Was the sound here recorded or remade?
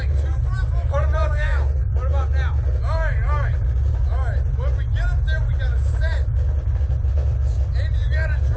recorded